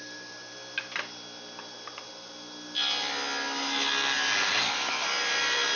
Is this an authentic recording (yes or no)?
yes